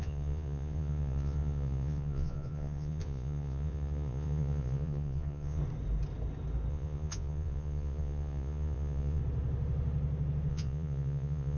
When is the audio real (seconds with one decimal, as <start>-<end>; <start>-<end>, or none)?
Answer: 5.6-6.7; 9.2-10.5